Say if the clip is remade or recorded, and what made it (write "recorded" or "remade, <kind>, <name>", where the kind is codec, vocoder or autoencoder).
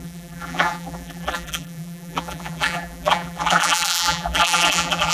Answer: remade, vocoder, BigVGAN v2